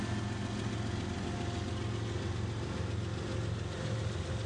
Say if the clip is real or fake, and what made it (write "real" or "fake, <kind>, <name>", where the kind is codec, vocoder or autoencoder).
real